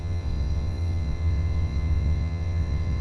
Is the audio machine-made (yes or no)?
yes